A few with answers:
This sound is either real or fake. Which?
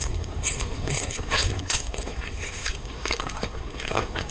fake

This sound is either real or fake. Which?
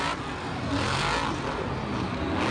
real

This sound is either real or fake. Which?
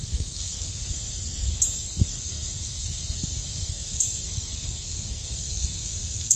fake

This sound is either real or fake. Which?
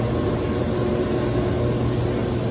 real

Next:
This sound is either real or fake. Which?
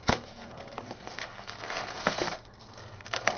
fake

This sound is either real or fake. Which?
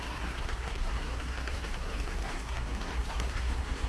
fake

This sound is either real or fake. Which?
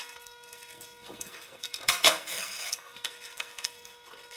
fake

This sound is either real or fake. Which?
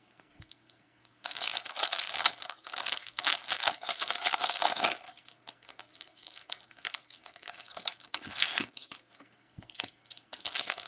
fake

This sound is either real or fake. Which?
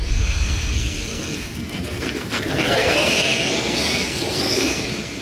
fake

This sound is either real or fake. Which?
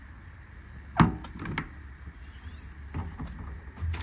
real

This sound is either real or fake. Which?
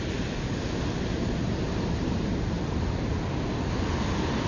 real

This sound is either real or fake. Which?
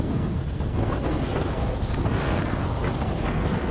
fake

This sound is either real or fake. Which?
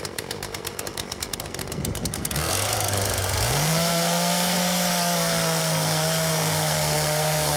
fake